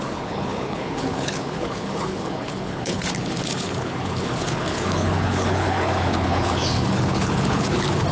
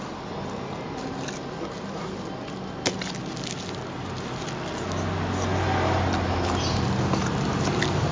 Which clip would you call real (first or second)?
second